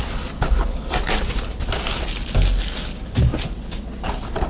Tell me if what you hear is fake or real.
real